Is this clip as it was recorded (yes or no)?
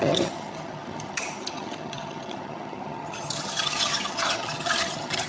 no